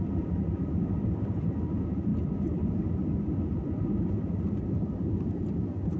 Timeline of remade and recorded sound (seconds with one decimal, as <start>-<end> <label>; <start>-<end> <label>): 0.0-6.0 recorded